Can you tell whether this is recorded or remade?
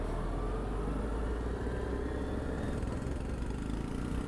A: recorded